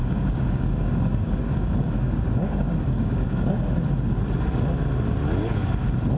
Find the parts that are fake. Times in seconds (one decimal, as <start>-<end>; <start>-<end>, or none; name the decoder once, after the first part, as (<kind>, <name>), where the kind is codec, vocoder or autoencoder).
0.0-3.5 (codec, DAC)